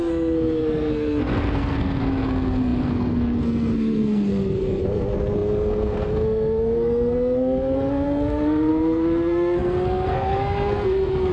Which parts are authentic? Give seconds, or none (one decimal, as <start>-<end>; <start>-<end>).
none

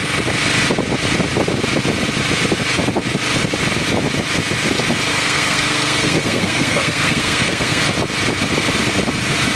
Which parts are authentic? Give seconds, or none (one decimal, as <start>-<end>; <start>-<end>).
0.0-5.1; 7.8-9.6

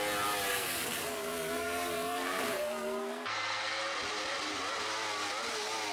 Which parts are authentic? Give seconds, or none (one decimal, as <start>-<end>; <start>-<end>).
0.0-0.5; 3.8-5.9

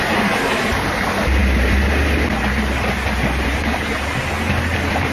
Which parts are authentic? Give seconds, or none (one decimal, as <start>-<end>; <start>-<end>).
0.0-5.1

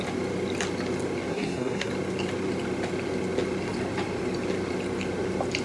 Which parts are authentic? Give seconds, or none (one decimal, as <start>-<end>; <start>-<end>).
0.0-1.3; 1.9-5.6

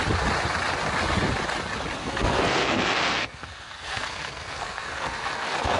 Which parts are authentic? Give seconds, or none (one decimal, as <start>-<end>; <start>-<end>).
0.0-2.0

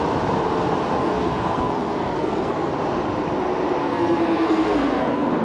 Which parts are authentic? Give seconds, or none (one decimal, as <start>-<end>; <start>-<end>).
0.0-1.0; 2.7-3.8

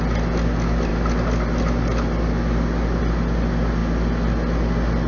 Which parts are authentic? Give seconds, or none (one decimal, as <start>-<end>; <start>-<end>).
0.0-5.1